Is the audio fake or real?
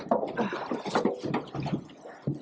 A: real